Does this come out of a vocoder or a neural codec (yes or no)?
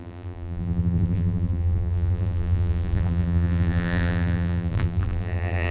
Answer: yes